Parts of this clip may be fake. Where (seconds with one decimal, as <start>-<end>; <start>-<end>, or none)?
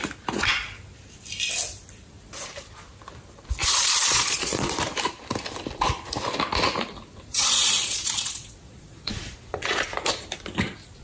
3.6-4.7; 7.3-9.7